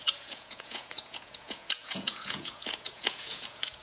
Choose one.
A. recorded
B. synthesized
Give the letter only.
B